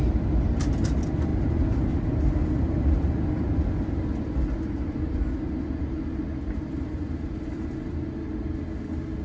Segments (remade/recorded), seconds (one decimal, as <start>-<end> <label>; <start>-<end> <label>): 0.0-9.2 recorded